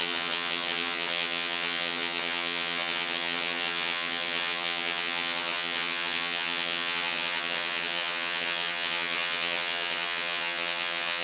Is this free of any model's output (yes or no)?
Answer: no